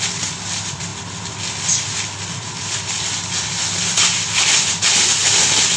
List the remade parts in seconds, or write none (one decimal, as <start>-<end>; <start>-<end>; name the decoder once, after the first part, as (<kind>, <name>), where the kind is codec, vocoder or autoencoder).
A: none